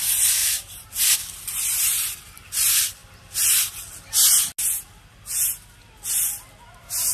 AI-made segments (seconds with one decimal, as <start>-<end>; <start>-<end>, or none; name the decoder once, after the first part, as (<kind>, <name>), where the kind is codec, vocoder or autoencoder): 0.4-1.0 (vocoder, BigVGAN v2); 1.9-2.5